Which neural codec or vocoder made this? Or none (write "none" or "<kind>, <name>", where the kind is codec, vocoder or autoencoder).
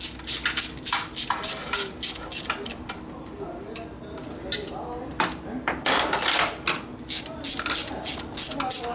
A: none